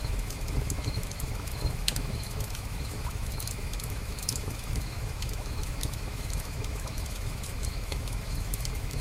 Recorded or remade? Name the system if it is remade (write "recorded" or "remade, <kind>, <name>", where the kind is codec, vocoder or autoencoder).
remade, autoencoder, DAC-VAE